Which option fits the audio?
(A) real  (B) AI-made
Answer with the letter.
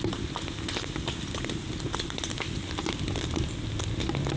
A